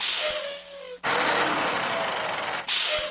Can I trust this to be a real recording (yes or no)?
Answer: yes